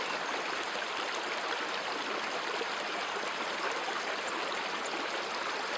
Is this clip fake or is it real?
fake